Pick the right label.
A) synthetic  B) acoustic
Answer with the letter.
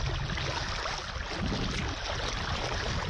B